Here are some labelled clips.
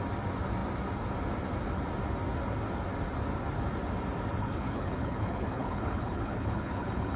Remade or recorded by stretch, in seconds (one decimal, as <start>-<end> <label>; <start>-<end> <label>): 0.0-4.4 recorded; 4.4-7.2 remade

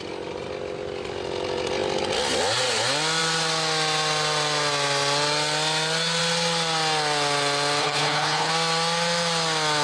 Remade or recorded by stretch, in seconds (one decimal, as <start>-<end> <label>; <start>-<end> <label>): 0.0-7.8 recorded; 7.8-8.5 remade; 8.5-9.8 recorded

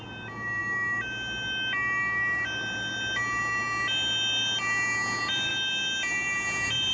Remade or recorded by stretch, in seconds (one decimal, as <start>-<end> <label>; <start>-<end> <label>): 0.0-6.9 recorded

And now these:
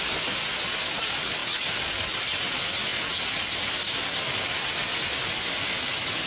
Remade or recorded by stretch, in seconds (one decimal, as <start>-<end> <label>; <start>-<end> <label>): 0.0-6.3 recorded

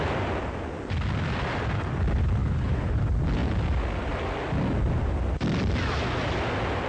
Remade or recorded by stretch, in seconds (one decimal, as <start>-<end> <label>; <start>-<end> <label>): 0.0-2.4 recorded; 2.4-3.0 remade; 3.0-6.9 recorded